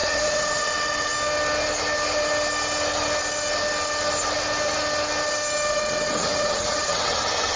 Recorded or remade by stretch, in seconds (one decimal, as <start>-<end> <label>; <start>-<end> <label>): 0.0-1.1 remade; 1.1-5.7 recorded; 5.7-7.6 remade

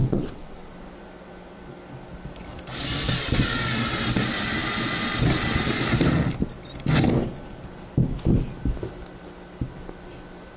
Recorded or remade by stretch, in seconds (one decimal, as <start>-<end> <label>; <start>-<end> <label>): 0.0-0.7 remade; 0.7-10.6 recorded

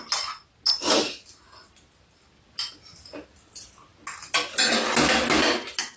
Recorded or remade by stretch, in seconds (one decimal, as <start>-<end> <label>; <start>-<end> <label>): 0.0-6.0 recorded

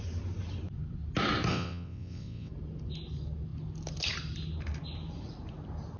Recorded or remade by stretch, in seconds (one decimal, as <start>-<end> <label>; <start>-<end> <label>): 0.0-1.5 recorded; 1.5-2.5 remade; 2.5-6.0 recorded